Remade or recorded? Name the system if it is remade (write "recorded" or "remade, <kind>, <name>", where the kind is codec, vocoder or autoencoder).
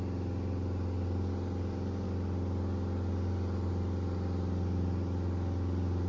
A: recorded